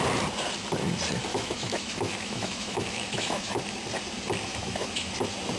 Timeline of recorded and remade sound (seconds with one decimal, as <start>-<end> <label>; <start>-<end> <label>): 0.0-1.3 recorded; 1.3-3.6 remade; 3.6-4.5 recorded; 4.5-5.1 remade; 5.1-5.6 recorded